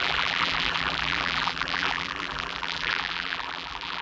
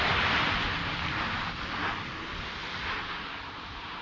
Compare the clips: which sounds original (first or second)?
second